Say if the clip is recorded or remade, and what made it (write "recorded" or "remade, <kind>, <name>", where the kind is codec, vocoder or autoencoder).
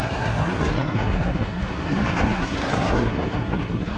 remade, codec, SNAC